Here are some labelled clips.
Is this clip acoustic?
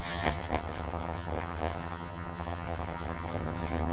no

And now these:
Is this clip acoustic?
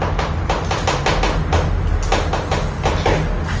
yes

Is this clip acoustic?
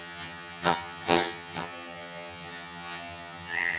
no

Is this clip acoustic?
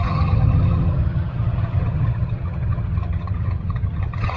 no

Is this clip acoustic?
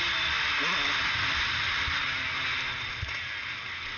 yes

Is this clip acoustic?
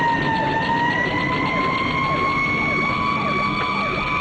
yes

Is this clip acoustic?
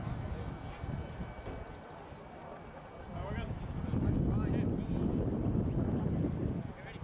yes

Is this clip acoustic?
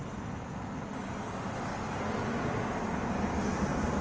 yes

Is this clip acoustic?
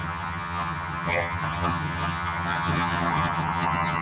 no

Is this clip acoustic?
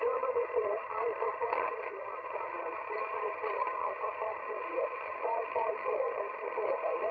no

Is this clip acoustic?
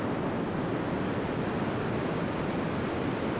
yes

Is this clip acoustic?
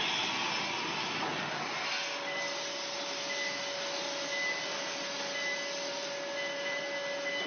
yes